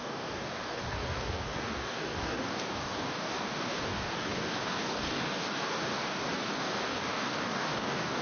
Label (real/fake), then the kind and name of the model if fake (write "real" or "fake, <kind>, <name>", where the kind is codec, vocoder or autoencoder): fake, codec, DAC